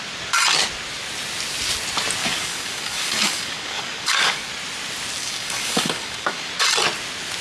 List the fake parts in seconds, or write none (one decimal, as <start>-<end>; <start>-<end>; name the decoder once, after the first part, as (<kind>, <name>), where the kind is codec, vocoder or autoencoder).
2.2-4.5 (codec, DAC); 5.2-6.5

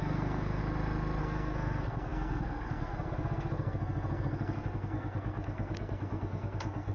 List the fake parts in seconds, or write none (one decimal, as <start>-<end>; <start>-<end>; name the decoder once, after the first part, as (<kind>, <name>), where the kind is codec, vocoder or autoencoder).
0.0-0.6 (codec, SNAC); 1.2-6.9

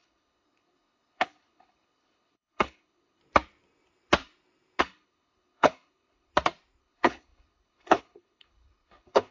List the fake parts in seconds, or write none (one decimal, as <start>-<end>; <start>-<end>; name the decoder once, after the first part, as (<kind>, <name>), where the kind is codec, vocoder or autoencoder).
0.0-3.2 (codec, HILCodec); 4.8-6.3; 6.8-9.3

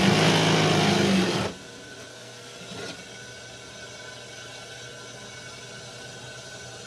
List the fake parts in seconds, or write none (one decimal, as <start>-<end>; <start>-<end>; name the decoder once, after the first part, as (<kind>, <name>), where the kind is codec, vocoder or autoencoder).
2.1-2.6 (codec, SNAC)